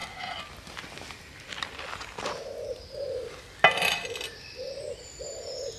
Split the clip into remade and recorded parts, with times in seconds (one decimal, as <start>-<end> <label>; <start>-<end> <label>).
0.0-5.8 recorded